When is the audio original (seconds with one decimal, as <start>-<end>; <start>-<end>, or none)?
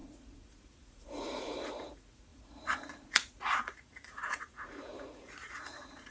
none